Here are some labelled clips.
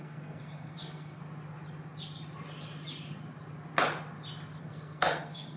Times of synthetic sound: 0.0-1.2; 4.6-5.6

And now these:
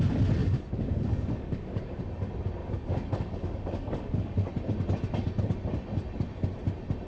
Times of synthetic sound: 0.4-2.0; 2.6-4.5

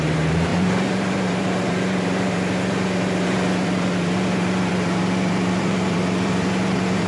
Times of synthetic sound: 0.0-7.1

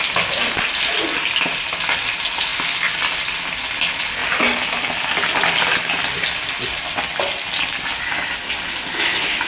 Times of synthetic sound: none

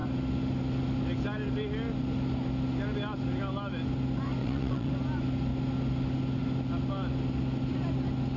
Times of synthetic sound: 4.4-4.9